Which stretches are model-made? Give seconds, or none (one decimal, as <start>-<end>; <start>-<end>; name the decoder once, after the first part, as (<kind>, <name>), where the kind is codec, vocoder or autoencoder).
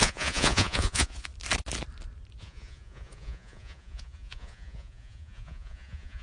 0.0-1.3 (vocoder, Vocos); 2.4-6.2